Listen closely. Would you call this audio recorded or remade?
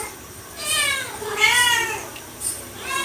remade